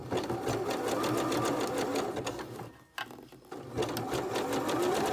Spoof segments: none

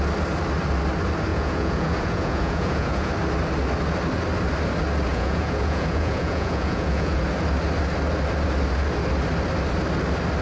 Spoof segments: 1.3-3.1 (vocoder, Vocos); 5.1-7.2

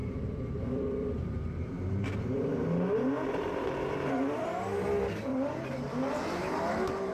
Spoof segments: 0.0-4.1 (vocoder, BigVGAN v2); 5.3-7.1

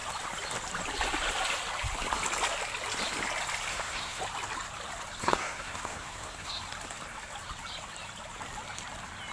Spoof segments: 3.7-4.2 (codec, SNAC); 5.2-6.6